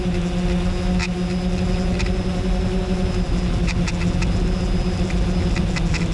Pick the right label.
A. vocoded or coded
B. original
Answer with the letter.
B